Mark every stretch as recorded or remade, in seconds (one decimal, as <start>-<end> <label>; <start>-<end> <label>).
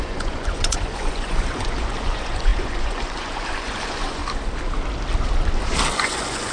0.0-4.2 remade; 4.2-6.0 recorded; 6.0-6.5 remade